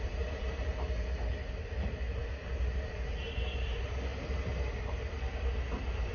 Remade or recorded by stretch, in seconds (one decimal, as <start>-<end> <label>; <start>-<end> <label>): 0.0-0.7 remade; 0.7-1.3 recorded; 1.3-6.1 remade